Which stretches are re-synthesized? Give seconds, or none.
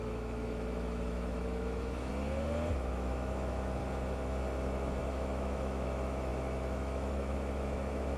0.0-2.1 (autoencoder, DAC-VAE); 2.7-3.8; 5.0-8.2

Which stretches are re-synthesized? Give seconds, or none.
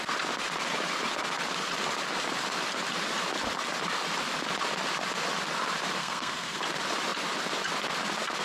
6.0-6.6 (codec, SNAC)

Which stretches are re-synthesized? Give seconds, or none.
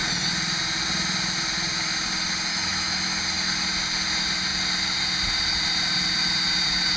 2.5-3.2 (autoencoder, DAC-VAE)